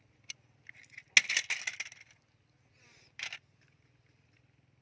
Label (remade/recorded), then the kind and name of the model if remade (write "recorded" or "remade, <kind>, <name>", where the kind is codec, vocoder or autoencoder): recorded